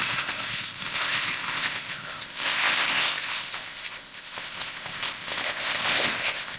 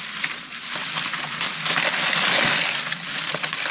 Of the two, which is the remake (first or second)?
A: first